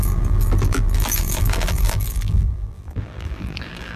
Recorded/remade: remade